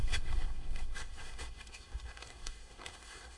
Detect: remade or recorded remade